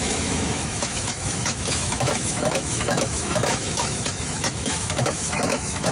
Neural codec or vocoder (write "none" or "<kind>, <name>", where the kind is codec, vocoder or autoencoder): autoencoder, DAC-VAE